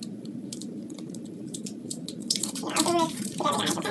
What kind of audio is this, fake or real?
fake